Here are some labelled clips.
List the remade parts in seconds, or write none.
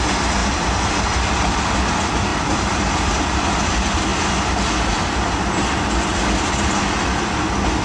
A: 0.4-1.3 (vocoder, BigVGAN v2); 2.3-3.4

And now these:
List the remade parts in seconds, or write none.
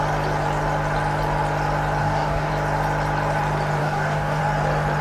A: 2.0-2.5 (codec, DAC); 3.8-4.4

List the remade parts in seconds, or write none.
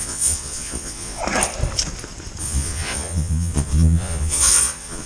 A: 0.0-1.2 (vocoder, Vocos); 2.4-5.1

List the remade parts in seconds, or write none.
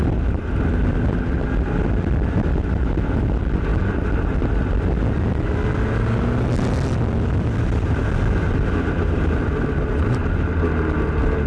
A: none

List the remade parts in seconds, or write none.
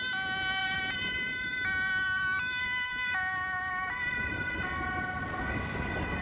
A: 0.6-4.3 (vocoder, BigVGAN v2)